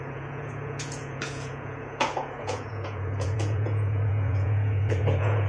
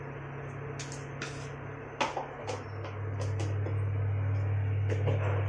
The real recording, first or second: second